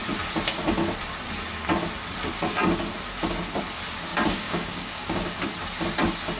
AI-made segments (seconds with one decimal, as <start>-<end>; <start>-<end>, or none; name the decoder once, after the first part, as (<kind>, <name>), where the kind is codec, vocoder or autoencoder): 4.1-5.4 (codec, DAC)